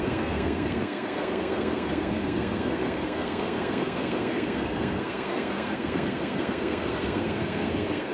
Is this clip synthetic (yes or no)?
yes